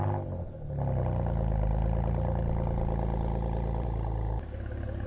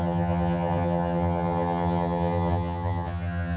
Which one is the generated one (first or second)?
second